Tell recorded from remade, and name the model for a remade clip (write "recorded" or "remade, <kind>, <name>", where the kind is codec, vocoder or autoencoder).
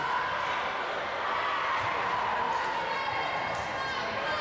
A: recorded